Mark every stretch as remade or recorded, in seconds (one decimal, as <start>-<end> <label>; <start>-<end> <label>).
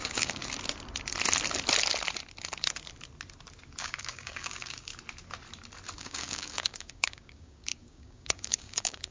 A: 0.0-0.4 remade; 0.4-3.8 recorded; 3.8-4.9 remade; 4.9-6.0 recorded; 6.0-9.1 remade